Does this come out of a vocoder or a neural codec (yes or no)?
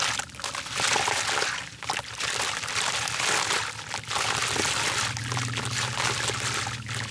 no